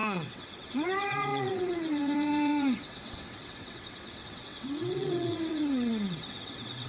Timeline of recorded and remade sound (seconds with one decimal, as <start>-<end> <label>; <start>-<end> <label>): 0.0-6.9 remade